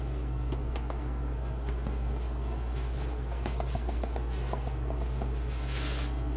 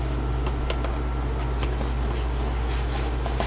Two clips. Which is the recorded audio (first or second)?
second